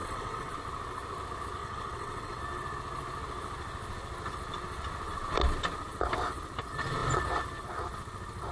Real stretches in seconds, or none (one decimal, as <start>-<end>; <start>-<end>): 0.5-1.6; 2.4-8.5

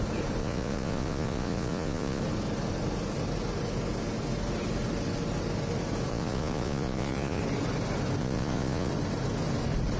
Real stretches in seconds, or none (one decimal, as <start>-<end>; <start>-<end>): 0.0-0.4; 2.2-6.1; 7.4-8.2; 8.9-10.0

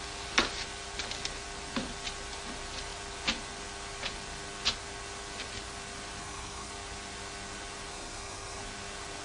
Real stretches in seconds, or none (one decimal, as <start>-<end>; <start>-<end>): 0.0-6.2; 6.7-7.9; 8.6-9.2